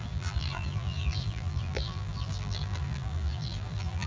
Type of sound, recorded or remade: remade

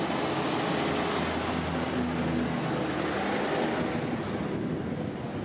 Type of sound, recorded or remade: recorded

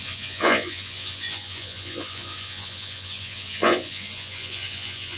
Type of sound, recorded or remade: remade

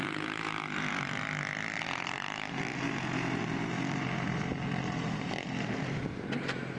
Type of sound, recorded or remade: remade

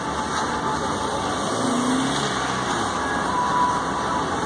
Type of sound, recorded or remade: recorded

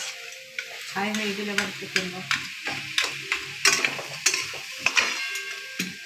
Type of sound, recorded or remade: recorded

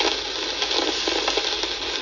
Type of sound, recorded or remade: recorded